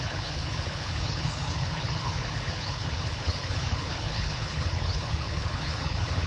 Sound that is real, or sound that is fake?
fake